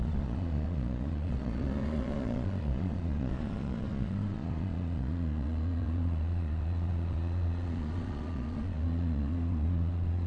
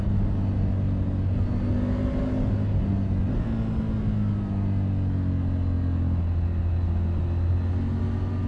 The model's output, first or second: first